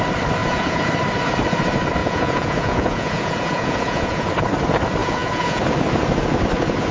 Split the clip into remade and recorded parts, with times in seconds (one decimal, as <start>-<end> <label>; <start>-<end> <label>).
0.0-0.4 recorded; 0.4-0.9 remade; 0.9-2.0 recorded; 2.0-4.3 remade; 4.3-5.0 recorded; 5.0-5.6 remade; 5.6-6.9 recorded